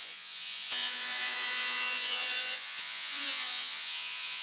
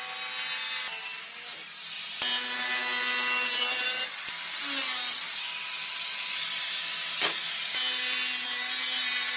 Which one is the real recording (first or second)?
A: second